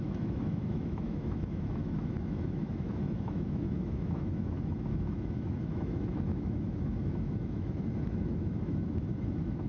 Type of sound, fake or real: fake